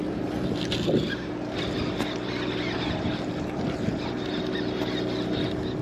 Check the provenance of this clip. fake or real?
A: real